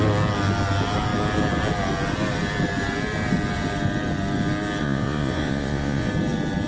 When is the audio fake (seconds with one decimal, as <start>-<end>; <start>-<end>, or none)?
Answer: 4.8-6.1